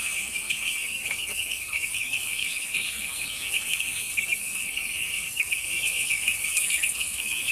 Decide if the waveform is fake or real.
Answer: fake